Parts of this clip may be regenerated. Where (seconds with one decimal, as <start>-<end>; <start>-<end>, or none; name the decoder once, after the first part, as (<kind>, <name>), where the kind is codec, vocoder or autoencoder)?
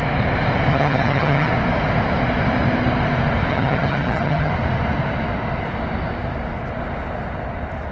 0.7-1.5 (vocoder, HiFi-GAN); 3.5-4.5